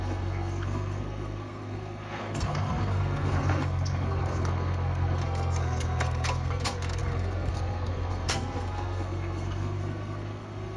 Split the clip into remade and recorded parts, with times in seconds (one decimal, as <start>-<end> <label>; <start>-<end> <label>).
0.0-10.8 remade